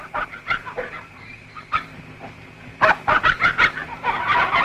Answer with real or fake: fake